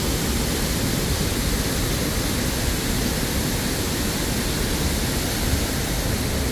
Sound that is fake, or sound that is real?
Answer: real